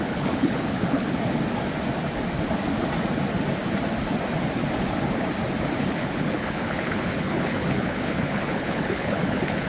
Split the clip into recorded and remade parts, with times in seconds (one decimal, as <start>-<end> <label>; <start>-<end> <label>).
0.0-1.2 remade; 1.2-5.8 recorded; 5.8-9.7 remade